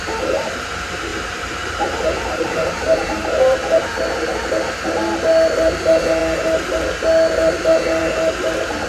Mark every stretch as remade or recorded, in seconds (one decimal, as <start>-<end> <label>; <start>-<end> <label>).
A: 0.0-1.1 recorded; 1.1-4.0 remade; 4.0-8.9 recorded